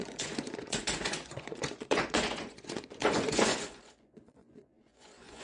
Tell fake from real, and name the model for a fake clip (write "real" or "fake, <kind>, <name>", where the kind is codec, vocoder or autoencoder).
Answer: fake, vocoder, Vocos